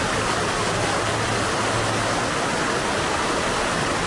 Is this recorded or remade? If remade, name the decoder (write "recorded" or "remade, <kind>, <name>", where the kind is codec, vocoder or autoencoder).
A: recorded